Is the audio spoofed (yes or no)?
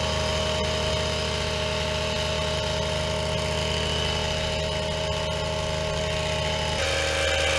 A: no